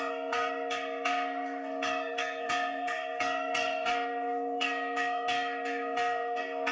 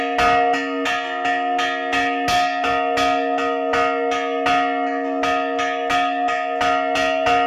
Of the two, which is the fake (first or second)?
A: first